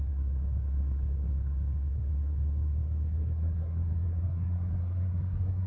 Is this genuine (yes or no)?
no